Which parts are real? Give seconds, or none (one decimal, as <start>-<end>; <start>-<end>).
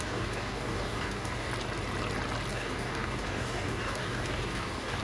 1.5-2.5